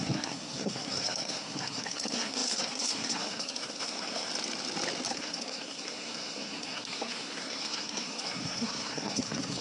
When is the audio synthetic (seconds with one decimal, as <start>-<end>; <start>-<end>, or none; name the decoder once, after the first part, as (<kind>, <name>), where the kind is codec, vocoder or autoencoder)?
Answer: 0.0-4.3 (codec, SNAC); 5.1-9.6